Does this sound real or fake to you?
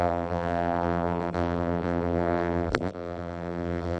fake